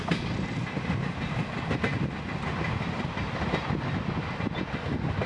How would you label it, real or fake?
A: real